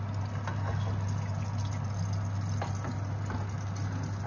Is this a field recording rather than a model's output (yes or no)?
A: yes